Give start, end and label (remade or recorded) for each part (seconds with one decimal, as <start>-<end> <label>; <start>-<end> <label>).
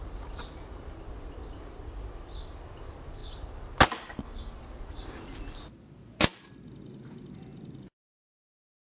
0.0-8.9 recorded